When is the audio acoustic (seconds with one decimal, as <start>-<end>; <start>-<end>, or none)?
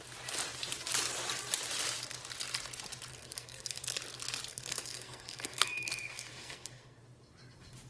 0.0-3.1; 3.8-4.5; 7.0-7.9